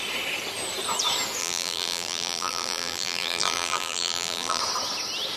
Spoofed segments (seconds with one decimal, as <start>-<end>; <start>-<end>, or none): 1.4-4.6